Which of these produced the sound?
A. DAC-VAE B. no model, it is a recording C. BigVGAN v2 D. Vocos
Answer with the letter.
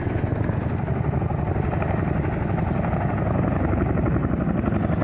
B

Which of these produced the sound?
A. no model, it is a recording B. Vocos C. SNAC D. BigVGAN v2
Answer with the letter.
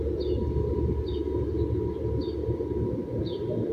A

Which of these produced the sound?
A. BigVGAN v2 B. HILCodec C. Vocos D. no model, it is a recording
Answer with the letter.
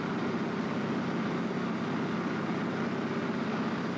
D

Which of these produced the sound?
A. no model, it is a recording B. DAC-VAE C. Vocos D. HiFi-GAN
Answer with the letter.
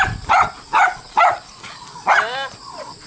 A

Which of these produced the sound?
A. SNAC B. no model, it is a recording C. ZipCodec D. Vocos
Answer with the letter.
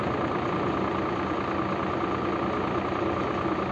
B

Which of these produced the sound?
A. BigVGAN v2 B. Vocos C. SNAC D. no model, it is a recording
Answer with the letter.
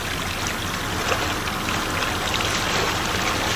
D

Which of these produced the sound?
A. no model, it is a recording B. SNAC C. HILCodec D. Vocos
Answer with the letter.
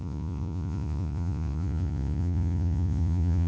D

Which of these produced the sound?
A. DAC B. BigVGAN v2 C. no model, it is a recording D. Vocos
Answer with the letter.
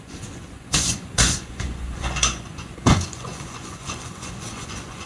D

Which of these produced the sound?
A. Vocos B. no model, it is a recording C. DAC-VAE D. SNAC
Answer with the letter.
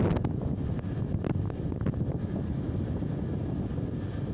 B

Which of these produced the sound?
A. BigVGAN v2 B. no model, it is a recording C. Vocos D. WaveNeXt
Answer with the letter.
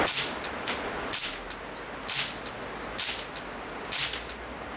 B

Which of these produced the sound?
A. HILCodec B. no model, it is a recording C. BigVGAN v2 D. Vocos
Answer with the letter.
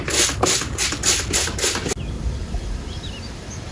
B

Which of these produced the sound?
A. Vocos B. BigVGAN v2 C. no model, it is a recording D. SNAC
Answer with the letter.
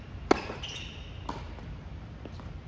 C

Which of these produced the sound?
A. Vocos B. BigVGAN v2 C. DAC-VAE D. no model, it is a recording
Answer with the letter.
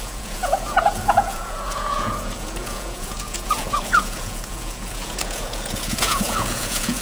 A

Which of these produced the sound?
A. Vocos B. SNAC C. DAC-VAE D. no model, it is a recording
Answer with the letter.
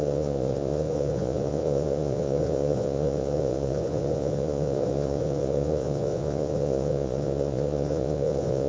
A